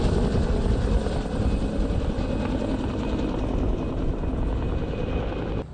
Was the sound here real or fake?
real